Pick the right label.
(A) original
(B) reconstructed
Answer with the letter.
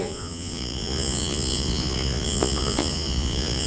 B